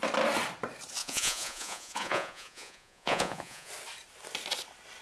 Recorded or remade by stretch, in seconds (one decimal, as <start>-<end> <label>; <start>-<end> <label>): 0.0-1.0 recorded; 1.0-3.7 remade; 3.7-5.0 recorded